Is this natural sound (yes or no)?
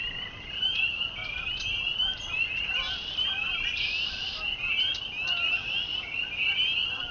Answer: yes